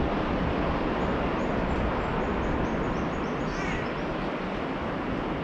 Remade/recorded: recorded